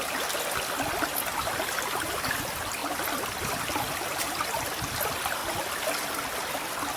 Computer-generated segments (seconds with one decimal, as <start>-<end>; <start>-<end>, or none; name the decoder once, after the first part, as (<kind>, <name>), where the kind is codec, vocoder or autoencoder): none